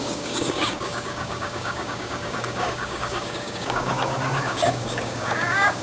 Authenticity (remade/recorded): remade